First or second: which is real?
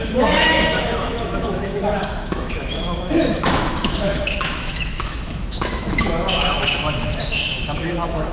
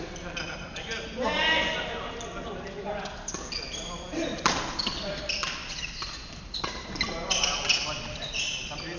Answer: second